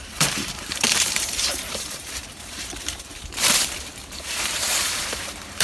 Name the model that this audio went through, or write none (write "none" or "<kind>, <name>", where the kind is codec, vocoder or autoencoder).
vocoder, BigVGAN v2